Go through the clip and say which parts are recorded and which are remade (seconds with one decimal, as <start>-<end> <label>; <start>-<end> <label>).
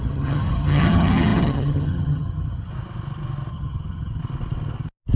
0.0-2.7 remade; 2.7-3.5 recorded; 3.5-4.2 remade; 4.2-5.2 recorded